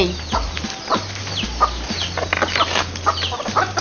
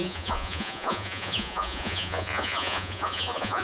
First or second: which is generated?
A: second